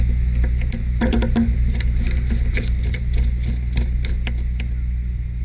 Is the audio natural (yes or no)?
yes